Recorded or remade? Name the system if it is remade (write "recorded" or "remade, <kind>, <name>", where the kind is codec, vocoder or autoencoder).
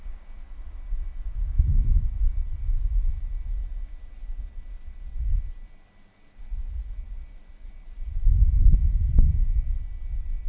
recorded